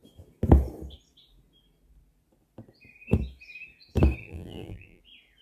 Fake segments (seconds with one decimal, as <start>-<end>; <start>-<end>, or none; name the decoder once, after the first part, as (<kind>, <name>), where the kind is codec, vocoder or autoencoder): 4.2-5.0 (vocoder, BigVGAN v2)